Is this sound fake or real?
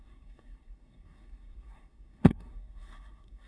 fake